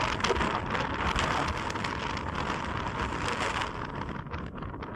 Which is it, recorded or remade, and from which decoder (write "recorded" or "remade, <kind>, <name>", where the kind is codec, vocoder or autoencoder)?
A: recorded